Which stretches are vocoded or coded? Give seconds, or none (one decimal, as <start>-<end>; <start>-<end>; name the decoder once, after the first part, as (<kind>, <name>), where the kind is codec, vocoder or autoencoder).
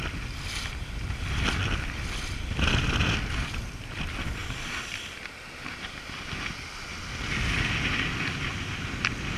none